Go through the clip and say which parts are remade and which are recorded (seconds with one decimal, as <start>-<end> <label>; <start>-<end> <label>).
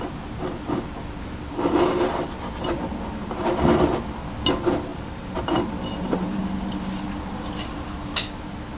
0.0-4.9 recorded; 4.9-6.4 remade; 6.4-8.8 recorded